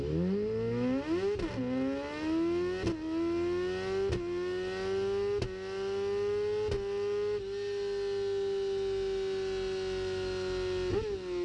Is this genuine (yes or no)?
yes